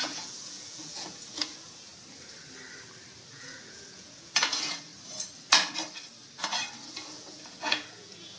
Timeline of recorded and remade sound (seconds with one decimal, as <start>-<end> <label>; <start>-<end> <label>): 0.0-1.9 remade; 1.9-3.3 recorded; 3.3-4.9 remade; 4.9-6.9 recorded; 6.9-8.4 remade